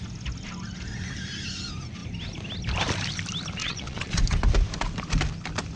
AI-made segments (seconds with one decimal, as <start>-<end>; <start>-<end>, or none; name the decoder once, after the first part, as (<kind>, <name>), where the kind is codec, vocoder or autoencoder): 3.6-4.2 (vocoder, Vocos)